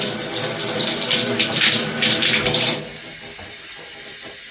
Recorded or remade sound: remade